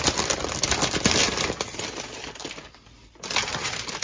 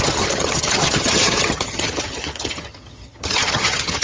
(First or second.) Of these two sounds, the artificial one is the second